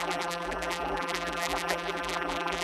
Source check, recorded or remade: remade